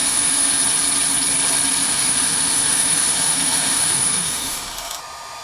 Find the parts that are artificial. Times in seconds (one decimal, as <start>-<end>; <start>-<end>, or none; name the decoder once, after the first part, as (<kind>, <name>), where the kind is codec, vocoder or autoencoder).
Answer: 0.0-0.6 (autoencoder, DAC-VAE); 1.8-5.0